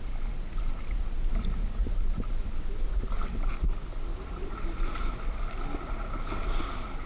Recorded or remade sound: recorded